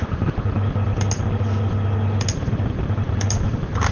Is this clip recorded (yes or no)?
yes